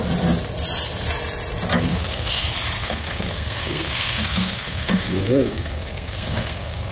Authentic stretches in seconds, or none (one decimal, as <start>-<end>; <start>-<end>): 0.0-1.9; 2.4-2.8